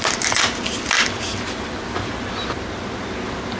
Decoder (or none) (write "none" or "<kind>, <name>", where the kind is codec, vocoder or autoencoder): none